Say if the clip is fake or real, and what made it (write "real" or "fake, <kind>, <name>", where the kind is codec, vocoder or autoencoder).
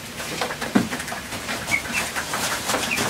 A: fake, vocoder, BigVGAN v2